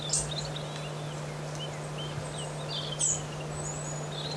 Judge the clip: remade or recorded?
recorded